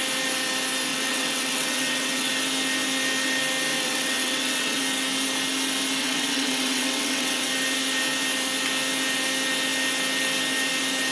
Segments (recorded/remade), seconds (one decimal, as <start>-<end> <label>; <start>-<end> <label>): 0.0-0.9 recorded; 0.9-2.3 remade; 2.3-3.7 recorded; 3.7-4.8 remade; 4.8-6.0 recorded; 6.0-7.5 remade; 7.5-11.1 recorded